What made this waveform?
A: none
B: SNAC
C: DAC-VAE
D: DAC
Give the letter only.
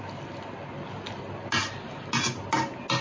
A